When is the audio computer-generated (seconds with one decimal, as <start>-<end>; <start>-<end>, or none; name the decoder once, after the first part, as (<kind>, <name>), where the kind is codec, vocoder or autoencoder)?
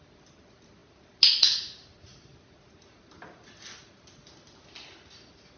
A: none